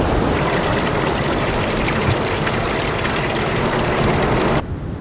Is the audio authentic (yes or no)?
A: no